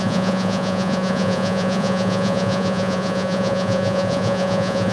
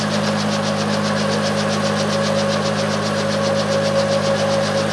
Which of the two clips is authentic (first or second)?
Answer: second